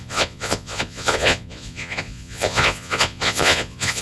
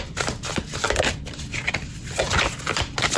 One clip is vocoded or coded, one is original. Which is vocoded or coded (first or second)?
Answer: first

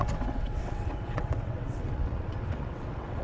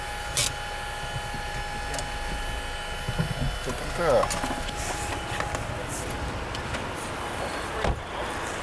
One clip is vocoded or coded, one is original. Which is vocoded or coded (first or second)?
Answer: first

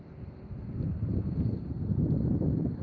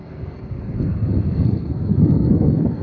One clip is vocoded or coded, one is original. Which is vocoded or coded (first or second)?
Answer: second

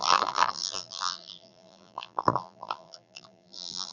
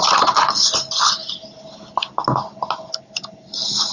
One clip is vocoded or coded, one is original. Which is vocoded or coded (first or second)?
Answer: first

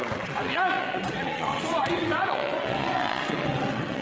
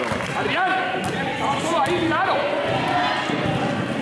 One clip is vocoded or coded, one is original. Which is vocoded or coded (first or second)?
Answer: first